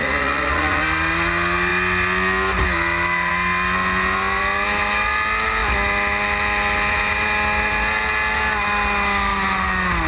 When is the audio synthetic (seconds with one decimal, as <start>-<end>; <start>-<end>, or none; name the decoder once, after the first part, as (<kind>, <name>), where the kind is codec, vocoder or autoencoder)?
0.0-0.8 (vocoder, Vocos)